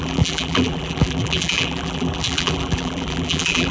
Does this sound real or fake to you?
fake